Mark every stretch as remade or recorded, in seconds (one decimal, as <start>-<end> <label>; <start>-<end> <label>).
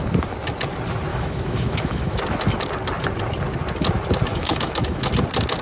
0.0-1.1 recorded; 1.1-2.2 remade; 2.2-4.3 recorded; 4.3-5.1 remade; 5.1-5.6 recorded